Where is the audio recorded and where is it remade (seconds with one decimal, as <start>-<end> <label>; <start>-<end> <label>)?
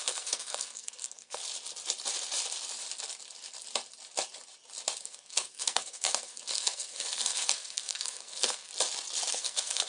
0.0-1.4 remade; 1.4-5.0 recorded; 5.0-8.7 remade; 8.7-9.3 recorded; 9.3-9.9 remade